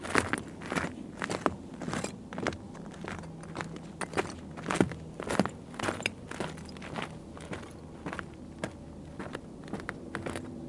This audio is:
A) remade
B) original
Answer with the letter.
B